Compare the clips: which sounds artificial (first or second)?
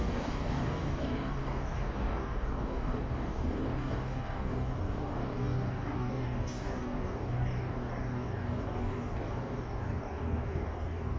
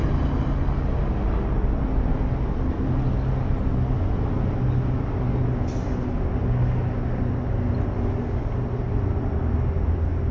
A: first